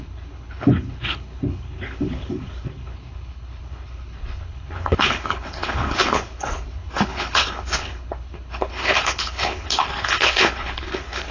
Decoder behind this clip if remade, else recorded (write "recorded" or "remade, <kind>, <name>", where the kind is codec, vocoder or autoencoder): remade, codec, HILCodec